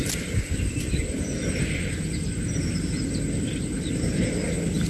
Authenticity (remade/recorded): recorded